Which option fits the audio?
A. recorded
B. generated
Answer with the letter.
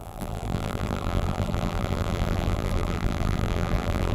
B